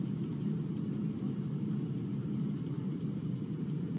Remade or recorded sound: remade